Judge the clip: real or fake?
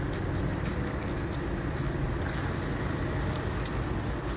real